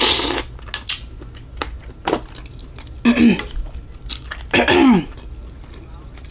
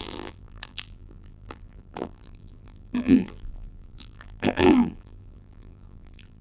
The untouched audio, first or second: first